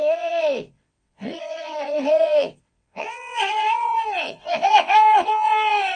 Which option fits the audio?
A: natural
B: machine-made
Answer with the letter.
B